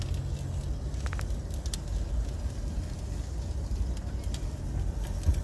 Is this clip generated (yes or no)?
no